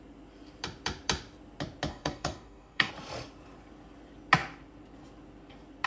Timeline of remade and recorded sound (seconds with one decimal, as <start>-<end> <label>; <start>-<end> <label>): 0.0-1.9 recorded; 1.9-2.9 remade; 2.9-5.9 recorded